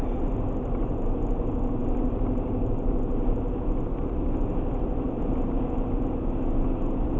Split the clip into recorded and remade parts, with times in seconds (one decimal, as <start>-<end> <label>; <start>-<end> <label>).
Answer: 0.0-7.2 recorded